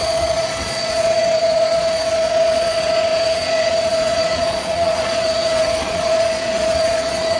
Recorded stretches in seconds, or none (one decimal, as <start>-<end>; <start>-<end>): none